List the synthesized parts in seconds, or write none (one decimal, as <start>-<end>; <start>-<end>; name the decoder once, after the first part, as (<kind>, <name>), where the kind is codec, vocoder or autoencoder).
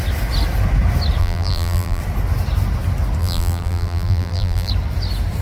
1.2-2.0 (vocoder, BigVGAN v2); 3.2-4.7